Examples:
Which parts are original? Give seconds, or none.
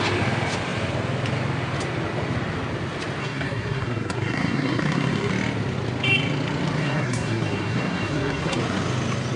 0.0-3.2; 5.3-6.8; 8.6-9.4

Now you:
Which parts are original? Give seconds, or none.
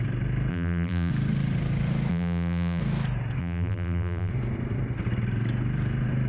0.0-0.5; 1.1-2.1; 2.8-3.4; 4.3-6.3